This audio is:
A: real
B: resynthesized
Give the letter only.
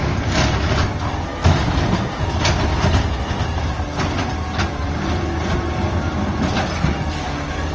A